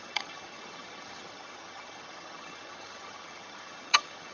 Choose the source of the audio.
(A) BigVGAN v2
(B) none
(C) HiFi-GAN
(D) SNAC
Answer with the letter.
C